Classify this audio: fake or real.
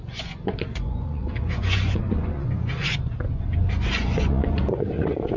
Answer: fake